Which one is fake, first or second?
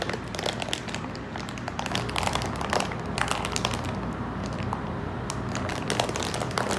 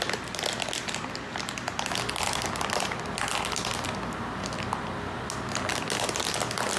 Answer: first